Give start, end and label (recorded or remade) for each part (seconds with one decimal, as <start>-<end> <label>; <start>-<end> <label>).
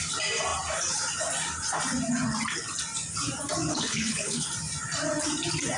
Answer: 0.0-3.7 recorded; 3.7-4.5 remade; 4.5-5.8 recorded